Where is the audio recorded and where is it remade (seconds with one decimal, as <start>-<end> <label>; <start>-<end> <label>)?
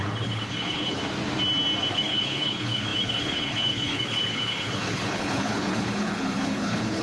0.0-1.0 remade; 1.0-1.9 recorded; 1.9-7.0 remade